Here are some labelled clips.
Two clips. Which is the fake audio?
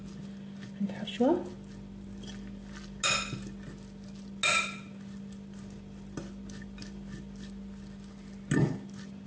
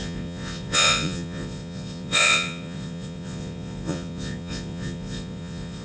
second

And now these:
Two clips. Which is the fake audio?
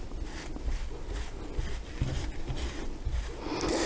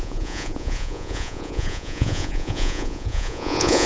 second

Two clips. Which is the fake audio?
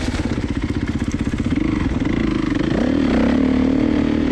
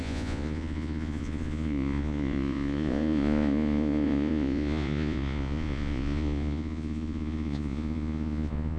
second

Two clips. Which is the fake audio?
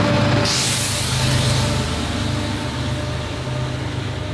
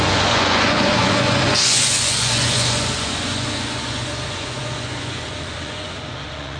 second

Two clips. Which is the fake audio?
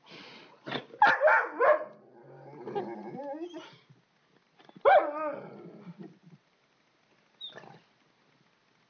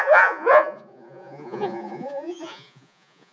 second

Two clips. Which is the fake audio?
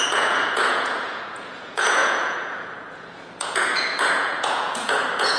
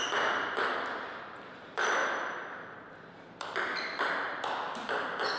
first